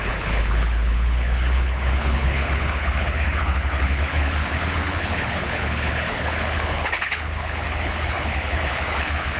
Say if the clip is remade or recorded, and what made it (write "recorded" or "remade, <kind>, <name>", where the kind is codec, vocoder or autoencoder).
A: remade, codec, HILCodec